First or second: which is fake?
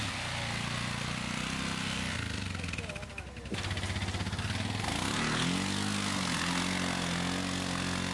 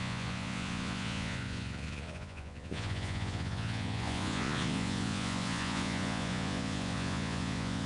second